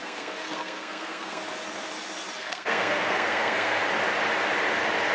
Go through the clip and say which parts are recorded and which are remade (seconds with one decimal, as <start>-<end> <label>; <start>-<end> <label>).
0.0-1.4 remade; 1.4-2.4 recorded; 2.4-3.8 remade; 3.8-5.1 recorded